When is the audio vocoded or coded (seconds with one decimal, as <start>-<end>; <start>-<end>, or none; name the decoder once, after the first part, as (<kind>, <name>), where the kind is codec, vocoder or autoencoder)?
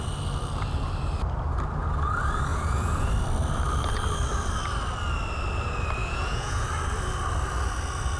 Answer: 2.5-3.1 (vocoder, Vocos); 6.0-6.7